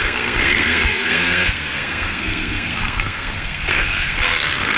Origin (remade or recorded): remade